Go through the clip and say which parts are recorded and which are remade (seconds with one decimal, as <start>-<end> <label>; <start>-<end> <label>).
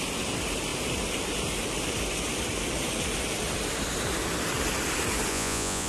0.0-5.3 recorded; 5.3-5.9 remade